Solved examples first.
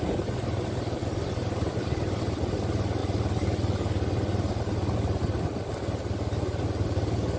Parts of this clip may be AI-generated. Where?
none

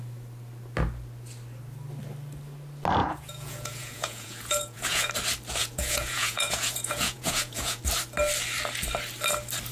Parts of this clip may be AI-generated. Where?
3.0-5.1 (vocoder, Vocos); 5.6-7.8

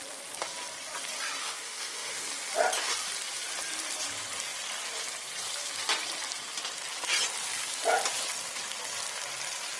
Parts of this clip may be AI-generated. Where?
1.4-2.3 (autoencoder, DAC-VAE)

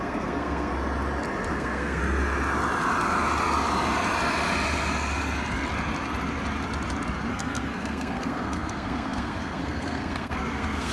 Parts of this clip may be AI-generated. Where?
0.0-0.7 (codec, SNAC); 1.5-2.0; 7.3-10.9

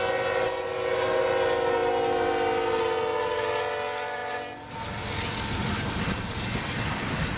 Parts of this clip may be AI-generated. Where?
none